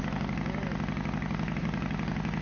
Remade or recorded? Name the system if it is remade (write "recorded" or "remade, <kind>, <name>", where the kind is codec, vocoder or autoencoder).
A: recorded